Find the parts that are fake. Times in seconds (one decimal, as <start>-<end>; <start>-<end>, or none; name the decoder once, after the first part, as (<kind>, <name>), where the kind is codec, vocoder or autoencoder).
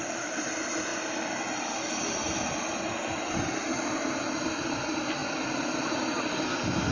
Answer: none